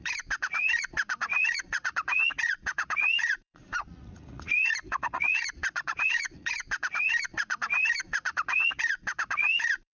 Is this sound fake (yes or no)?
yes